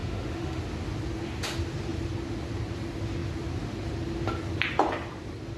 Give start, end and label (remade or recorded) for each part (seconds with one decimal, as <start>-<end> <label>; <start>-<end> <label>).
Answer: 0.0-0.6 remade; 0.6-5.6 recorded